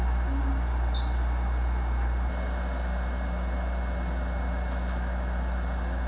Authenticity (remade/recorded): recorded